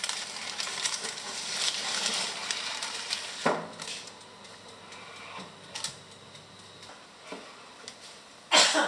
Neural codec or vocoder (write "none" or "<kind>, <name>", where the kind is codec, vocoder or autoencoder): none